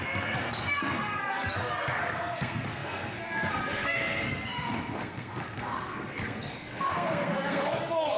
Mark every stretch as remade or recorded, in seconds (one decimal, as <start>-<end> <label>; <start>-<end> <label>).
0.0-8.2 remade